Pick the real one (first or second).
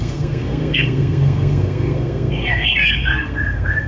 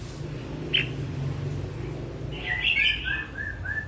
second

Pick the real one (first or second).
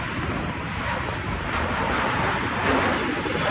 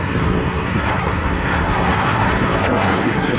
first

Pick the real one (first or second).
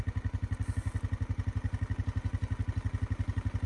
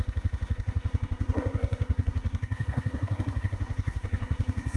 first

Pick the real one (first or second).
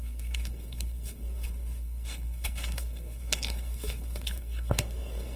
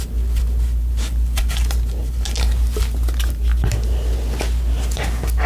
second